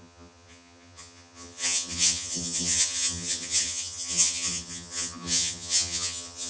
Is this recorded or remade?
remade